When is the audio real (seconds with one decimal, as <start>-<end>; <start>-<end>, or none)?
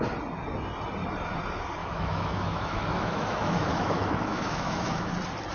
0.0-1.8; 5.1-5.5